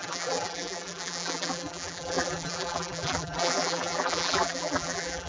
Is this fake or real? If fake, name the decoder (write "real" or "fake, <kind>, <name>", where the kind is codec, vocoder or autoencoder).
fake, vocoder, BigVGAN v2